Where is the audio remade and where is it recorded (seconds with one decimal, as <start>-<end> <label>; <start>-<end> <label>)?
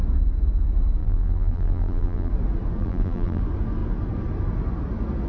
0.0-1.0 recorded; 1.0-2.3 remade; 2.3-2.8 recorded; 2.8-3.4 remade; 3.4-5.3 recorded